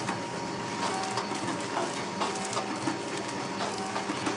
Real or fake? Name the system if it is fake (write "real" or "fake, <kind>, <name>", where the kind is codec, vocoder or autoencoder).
real